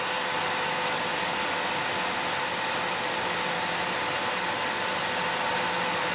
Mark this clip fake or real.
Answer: real